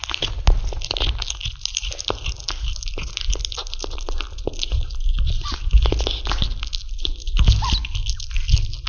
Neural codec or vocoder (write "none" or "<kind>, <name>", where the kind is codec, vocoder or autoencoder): none